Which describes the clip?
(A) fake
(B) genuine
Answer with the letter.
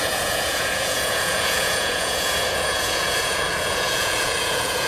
A